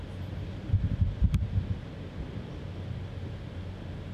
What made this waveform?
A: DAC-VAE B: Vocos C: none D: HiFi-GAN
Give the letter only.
C